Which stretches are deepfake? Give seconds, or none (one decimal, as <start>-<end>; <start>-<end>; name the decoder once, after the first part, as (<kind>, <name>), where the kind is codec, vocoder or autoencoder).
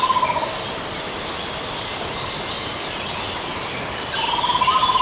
3.5-5.0 (vocoder, BigVGAN v2)